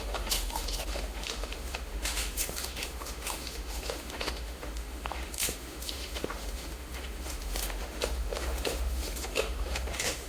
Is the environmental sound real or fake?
fake